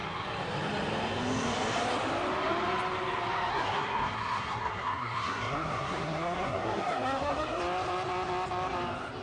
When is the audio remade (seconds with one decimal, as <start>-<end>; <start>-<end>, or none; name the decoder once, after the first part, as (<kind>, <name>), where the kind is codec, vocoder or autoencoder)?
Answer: 3.5-7.6 (codec, SNAC)